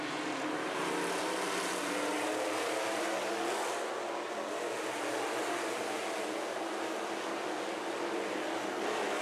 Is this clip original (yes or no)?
yes